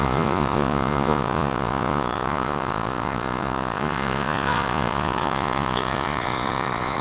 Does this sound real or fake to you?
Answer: fake